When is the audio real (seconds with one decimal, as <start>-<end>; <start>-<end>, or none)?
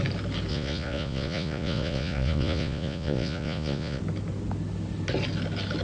0.0-0.5; 4.0-5.8